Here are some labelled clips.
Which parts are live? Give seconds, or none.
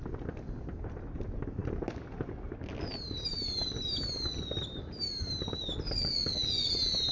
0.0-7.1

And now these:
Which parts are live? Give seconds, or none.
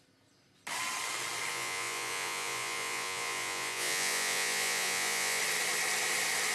0.0-1.5; 5.4-6.5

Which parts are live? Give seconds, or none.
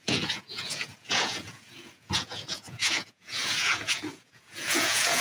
none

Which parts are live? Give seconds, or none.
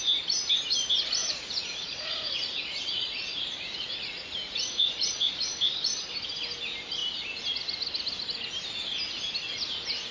0.0-1.2; 5.3-10.1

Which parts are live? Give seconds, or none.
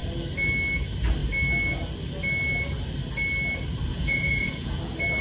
0.0-3.9; 4.8-5.2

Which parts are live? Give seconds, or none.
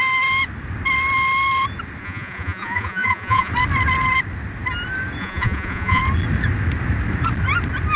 0.0-2.0; 3.5-5.2; 6.0-8.0